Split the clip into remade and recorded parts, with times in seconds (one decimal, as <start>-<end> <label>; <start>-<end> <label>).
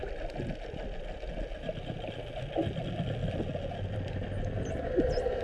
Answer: 0.0-5.4 recorded